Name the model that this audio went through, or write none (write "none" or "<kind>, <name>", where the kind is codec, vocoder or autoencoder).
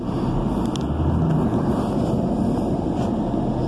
none